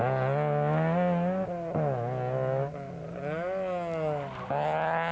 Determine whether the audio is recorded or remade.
recorded